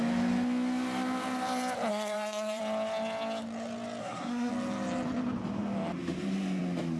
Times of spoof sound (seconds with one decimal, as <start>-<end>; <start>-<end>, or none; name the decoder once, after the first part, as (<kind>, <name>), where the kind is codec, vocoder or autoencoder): 1.9-2.6 (codec, SNAC); 4.0-4.5